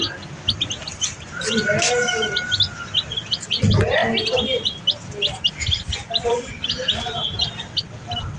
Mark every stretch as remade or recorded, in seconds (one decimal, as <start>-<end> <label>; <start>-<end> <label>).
0.0-0.8 remade; 0.8-1.4 recorded; 1.4-4.0 remade; 4.0-5.5 recorded; 5.5-8.4 remade